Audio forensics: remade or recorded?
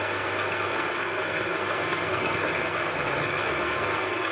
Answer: remade